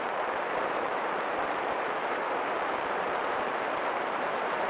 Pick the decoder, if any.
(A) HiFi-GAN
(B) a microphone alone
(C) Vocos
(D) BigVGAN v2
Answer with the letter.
D